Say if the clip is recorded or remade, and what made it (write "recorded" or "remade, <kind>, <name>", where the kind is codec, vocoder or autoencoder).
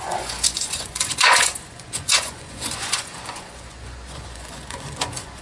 remade, vocoder, Vocos